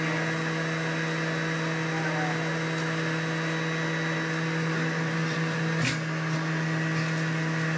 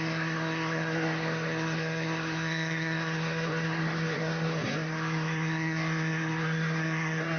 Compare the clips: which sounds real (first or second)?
first